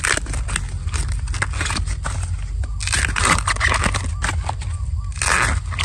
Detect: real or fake real